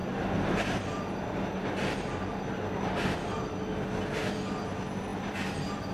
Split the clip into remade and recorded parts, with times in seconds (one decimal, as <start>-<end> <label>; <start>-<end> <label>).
0.0-3.5 remade; 3.5-5.9 recorded